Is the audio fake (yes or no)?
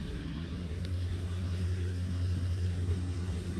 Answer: yes